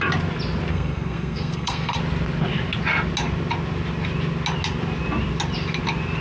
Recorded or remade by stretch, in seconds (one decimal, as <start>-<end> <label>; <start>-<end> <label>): 0.0-0.7 recorded; 0.7-2.0 remade; 2.0-6.2 recorded